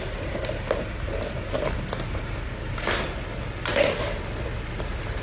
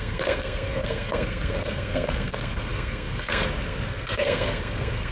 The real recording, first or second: first